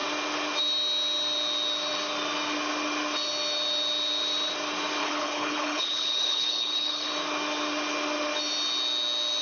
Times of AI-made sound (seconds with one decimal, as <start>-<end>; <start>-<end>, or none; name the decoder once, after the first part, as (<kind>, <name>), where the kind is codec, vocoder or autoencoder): 5.0-7.1 (codec, HILCodec)